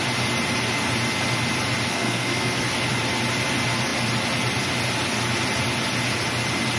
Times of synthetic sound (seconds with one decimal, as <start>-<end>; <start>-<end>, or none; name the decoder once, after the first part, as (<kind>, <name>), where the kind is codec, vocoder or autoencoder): 1.9-2.6 (codec, SNAC)